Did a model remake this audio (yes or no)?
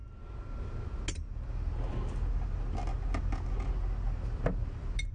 no